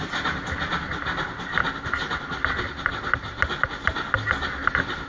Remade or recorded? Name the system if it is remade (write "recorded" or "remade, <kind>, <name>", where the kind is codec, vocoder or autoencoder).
recorded